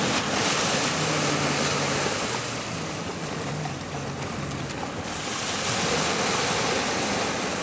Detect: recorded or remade recorded